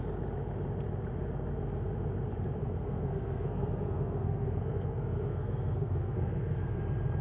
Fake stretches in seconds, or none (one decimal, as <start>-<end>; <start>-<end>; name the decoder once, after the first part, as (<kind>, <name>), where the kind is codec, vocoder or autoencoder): 2.6-6.8 (codec, SNAC)